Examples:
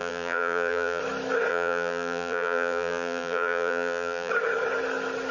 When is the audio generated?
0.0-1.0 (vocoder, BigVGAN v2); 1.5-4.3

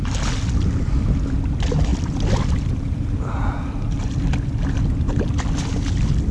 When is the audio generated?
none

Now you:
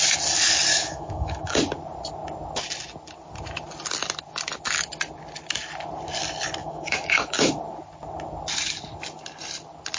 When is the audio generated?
0.7-1.6 (autoencoder, DAC-VAE); 6.6-7.5

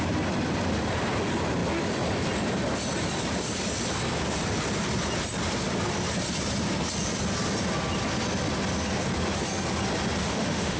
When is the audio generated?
10.2-10.8 (autoencoder, DAC-VAE)

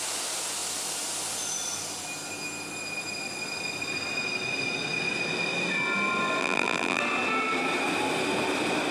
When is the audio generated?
6.4-7.0 (vocoder, BigVGAN v2)